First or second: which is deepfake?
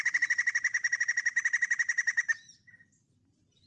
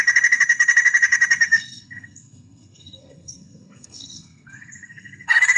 second